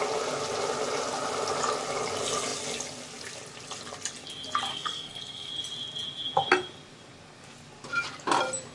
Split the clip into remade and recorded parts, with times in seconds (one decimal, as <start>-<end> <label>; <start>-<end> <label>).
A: 0.0-4.7 recorded; 4.7-5.5 remade; 5.5-8.7 recorded